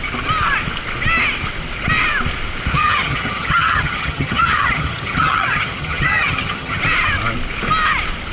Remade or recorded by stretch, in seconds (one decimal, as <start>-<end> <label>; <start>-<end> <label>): 0.0-2.7 recorded; 2.7-6.8 remade; 6.8-8.3 recorded